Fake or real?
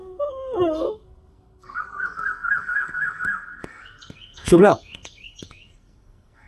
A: fake